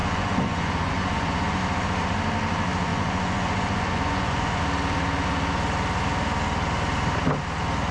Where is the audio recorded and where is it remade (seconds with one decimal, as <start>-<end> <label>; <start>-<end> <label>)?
0.0-1.6 remade; 1.6-2.9 recorded; 2.9-4.6 remade; 4.6-7.9 recorded